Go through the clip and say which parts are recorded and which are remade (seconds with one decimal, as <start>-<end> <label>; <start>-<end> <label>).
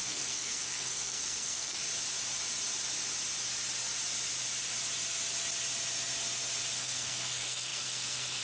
0.0-1.8 remade; 1.8-6.8 recorded; 6.8-8.4 remade